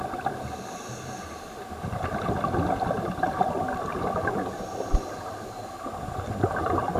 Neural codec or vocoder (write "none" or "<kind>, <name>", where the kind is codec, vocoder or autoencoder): none